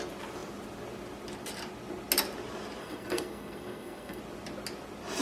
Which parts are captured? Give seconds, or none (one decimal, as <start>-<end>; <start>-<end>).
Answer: 0.0-2.8; 4.2-5.2